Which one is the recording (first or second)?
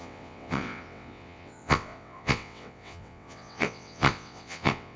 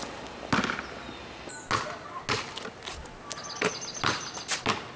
second